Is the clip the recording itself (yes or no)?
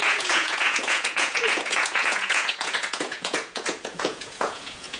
no